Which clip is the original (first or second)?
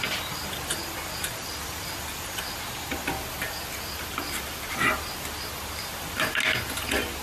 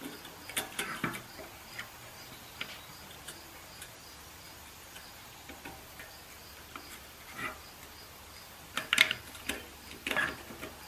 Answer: first